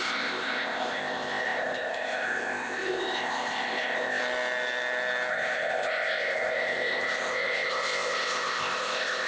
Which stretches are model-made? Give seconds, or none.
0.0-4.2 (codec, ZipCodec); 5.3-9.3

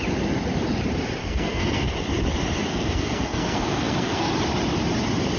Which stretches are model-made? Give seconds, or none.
1.2-1.9 (codec, SNAC); 2.7-4.3

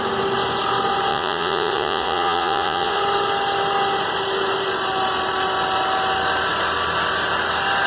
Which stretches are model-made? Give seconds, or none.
1.1-3.0 (vocoder, Vocos)

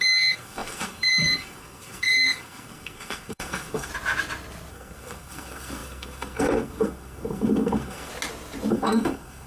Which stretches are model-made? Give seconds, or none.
0.0-3.9 (codec, SNAC); 4.7-8.1; 8.7-9.5